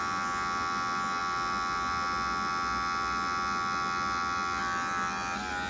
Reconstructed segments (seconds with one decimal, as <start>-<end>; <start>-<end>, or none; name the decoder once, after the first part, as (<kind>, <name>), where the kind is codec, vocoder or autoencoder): none